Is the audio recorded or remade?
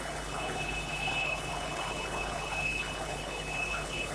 remade